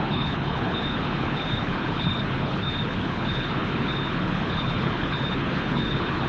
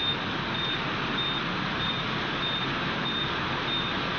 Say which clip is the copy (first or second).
first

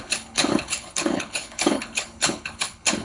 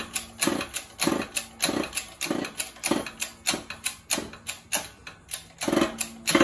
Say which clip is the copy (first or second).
first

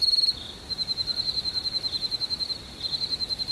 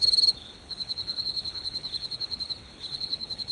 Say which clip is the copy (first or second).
second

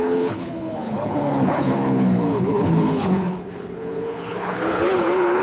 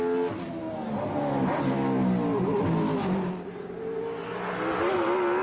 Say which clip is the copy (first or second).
first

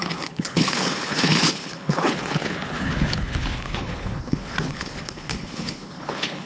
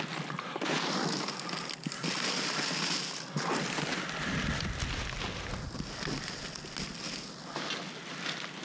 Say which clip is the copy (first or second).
first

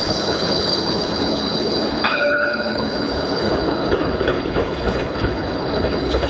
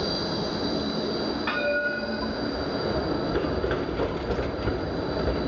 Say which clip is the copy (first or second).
first